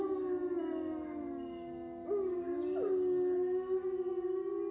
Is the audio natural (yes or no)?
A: yes